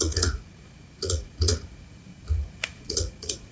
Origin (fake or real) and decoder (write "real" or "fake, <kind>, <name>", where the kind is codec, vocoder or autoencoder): fake, vocoder, Vocos